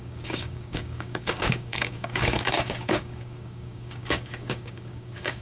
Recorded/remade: remade